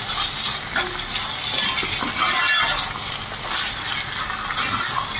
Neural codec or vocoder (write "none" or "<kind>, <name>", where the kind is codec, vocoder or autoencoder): none